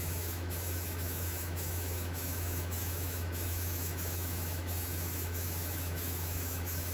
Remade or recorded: remade